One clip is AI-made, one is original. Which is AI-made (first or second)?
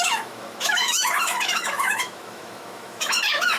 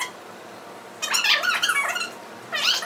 first